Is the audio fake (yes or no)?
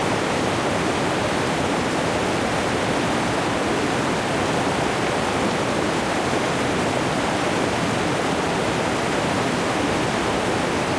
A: no